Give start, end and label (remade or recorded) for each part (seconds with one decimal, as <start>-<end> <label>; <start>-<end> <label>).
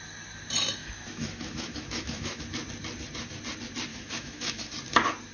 0.0-0.8 recorded; 0.8-2.4 remade; 2.4-3.9 recorded; 3.9-4.7 remade; 4.7-5.3 recorded